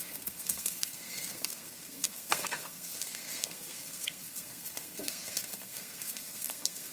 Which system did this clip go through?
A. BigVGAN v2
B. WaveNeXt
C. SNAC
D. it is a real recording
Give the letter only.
C